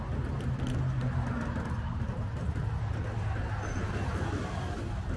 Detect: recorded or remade recorded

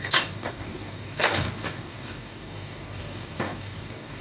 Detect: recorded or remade remade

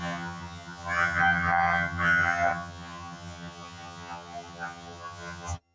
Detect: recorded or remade remade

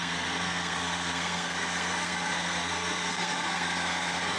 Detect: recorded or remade remade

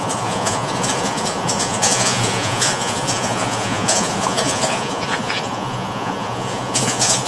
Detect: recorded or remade remade